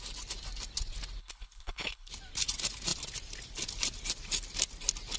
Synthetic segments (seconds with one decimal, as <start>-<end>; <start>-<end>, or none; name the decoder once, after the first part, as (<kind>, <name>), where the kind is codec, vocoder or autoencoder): 1.2-2.1 (codec, HILCodec)